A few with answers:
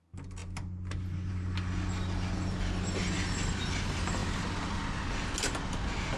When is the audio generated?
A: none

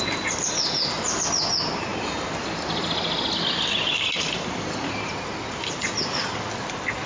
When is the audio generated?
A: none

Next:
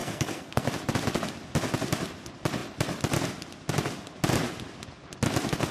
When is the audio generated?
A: 0.0-0.7